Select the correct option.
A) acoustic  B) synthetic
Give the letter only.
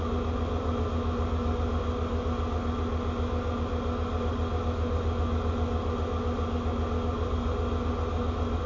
A